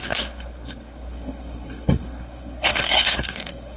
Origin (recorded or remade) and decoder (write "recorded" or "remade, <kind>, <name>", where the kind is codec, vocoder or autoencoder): remade, codec, SNAC